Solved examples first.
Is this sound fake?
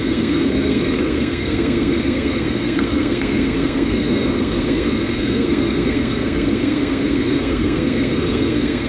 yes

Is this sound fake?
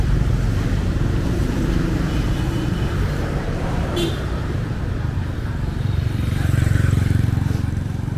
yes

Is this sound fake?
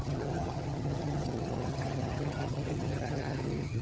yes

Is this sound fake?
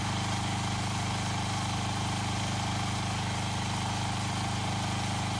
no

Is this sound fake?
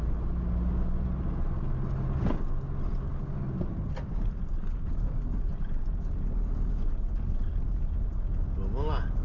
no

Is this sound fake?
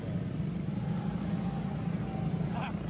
no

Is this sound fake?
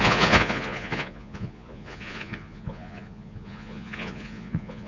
yes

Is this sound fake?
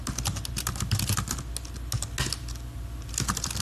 no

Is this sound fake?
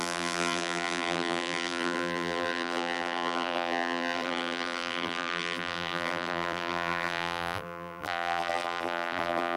yes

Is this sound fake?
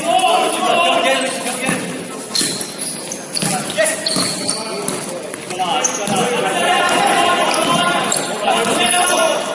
no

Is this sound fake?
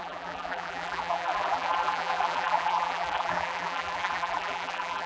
yes